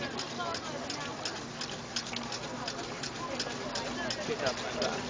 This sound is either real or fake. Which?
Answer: real